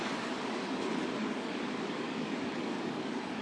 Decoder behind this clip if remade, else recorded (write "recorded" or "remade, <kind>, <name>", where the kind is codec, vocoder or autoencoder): remade, codec, DAC